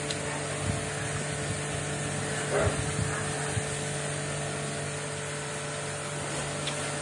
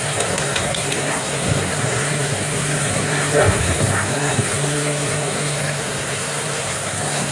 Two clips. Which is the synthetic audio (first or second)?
second